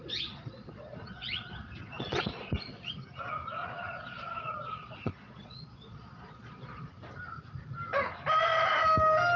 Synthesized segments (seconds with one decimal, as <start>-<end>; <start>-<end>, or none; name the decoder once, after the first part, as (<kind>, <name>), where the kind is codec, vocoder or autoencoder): 0.0-2.9 (vocoder, Vocos); 3.6-6.9